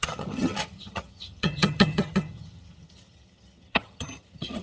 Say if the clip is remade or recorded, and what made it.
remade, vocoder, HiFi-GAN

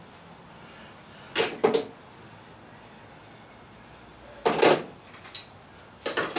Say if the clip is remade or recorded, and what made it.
recorded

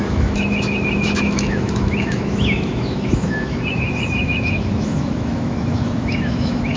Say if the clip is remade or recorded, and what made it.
remade, autoencoder, DAC-VAE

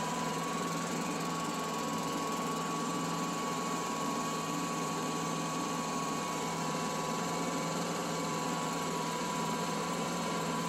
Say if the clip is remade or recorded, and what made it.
remade, vocoder, BigVGAN v2